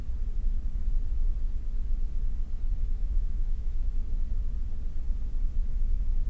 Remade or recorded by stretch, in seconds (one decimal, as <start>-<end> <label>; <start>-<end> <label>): 0.0-3.0 recorded; 3.0-3.9 remade; 3.9-6.3 recorded